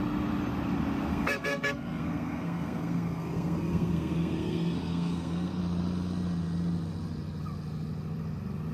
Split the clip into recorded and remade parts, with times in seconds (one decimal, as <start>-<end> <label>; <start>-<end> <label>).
0.0-1.1 recorded; 1.1-5.6 remade; 5.6-8.7 recorded